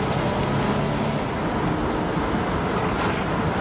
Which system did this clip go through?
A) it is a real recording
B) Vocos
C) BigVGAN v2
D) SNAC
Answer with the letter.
A